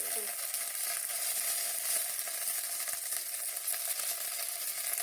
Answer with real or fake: real